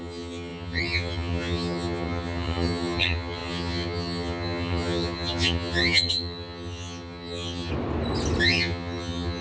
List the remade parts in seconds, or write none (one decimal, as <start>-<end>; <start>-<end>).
0.0-7.7; 8.4-9.4